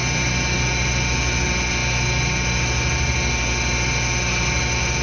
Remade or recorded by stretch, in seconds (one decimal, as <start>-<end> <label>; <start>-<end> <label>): 0.0-5.0 recorded